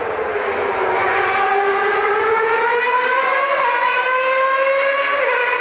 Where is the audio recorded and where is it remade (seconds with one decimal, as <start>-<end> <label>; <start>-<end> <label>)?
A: 0.0-0.6 recorded; 0.6-4.0 remade; 4.0-5.6 recorded